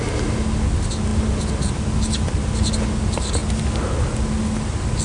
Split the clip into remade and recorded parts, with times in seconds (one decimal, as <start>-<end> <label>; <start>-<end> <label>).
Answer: 0.0-5.0 recorded